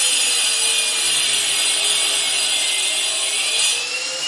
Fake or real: real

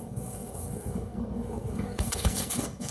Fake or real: fake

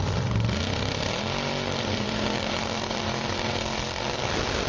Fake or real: fake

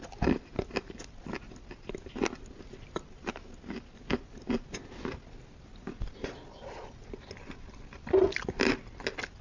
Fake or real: real